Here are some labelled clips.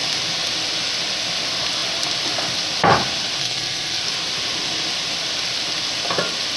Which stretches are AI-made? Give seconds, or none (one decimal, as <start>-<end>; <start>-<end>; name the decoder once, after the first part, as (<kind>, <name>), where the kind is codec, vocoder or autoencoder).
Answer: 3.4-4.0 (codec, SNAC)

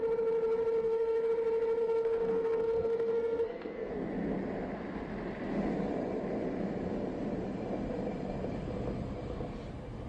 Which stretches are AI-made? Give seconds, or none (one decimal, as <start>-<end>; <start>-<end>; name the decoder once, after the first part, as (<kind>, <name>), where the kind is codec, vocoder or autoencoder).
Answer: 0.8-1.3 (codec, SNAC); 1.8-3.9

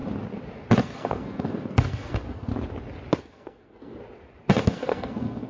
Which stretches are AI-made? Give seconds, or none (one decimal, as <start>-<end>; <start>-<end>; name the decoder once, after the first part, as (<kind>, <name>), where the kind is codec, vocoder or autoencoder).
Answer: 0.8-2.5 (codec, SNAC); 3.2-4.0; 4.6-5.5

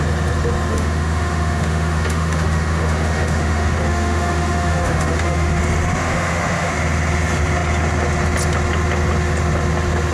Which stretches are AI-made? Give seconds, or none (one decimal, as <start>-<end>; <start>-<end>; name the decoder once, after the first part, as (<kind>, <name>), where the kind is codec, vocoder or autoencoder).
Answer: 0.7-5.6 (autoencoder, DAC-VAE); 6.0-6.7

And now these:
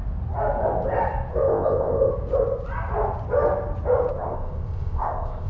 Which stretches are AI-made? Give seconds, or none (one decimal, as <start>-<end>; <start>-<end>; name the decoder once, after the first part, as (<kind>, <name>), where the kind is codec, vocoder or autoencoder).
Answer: 1.3-2.1 (codec, ZipCodec); 4.1-5.5

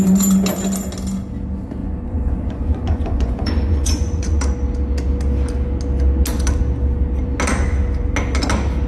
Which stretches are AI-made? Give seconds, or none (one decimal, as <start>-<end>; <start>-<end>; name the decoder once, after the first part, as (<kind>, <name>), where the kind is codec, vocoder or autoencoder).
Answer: 1.8-4.4 (vocoder, Vocos)